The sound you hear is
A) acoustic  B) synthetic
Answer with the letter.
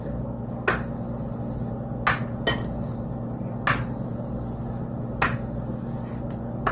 A